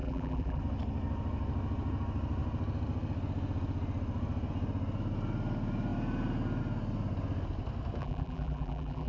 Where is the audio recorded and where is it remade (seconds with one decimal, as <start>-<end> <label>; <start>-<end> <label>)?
0.0-0.6 remade; 0.6-8.0 recorded; 8.0-9.1 remade